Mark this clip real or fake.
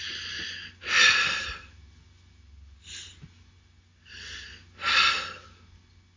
real